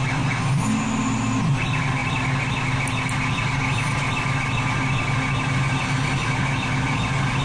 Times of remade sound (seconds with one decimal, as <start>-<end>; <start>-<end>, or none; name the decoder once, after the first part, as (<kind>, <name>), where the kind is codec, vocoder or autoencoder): none